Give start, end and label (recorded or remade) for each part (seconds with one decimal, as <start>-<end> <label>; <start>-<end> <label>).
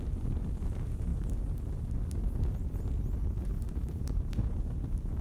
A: 0.0-3.2 recorded; 3.2-4.6 remade; 4.6-5.2 recorded